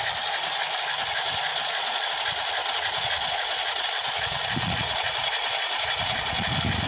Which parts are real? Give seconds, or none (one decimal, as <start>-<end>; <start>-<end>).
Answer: 0.0-1.5; 2.1-2.6; 6.5-6.9